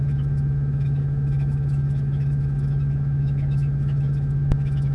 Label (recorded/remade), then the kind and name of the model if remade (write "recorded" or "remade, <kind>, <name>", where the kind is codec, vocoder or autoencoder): remade, autoencoder, DAC-VAE